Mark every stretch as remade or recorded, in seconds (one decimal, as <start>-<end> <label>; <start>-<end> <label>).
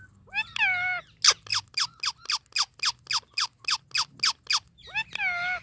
0.0-5.6 recorded